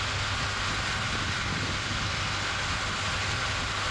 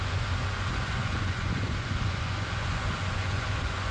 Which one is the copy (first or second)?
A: second